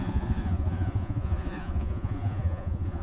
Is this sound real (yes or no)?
no